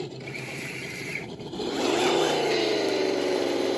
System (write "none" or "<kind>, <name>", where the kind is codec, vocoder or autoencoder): vocoder, BigVGAN v2